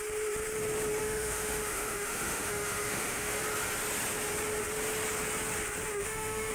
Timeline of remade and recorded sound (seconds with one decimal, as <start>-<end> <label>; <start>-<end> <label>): 0.0-1.0 recorded; 1.0-3.4 remade; 3.4-5.9 recorded; 5.9-6.5 remade

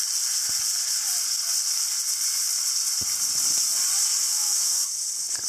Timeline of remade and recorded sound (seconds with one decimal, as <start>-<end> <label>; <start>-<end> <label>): 0.0-4.3 recorded; 4.3-4.9 remade; 4.9-5.5 recorded